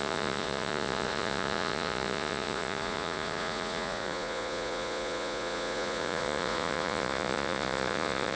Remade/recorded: remade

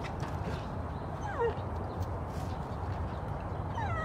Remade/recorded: recorded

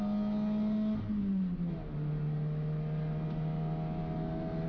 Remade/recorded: recorded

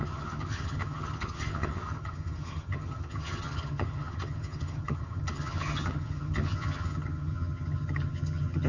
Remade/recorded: remade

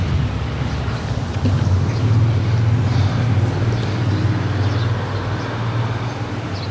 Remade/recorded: recorded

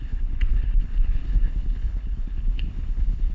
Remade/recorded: remade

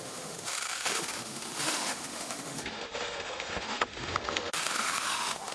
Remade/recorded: remade